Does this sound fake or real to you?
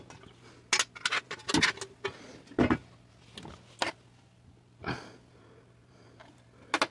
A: real